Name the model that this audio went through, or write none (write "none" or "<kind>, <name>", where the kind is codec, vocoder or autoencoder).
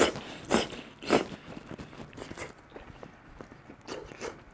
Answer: none